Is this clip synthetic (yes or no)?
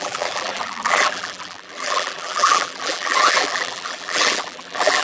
yes